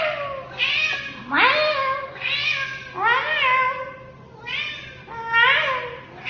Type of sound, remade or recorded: recorded